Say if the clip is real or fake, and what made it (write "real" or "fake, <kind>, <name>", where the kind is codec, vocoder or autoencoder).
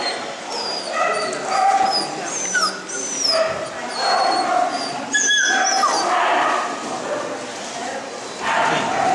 real